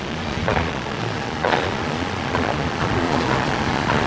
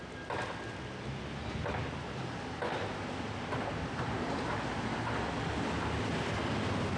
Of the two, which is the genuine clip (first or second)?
second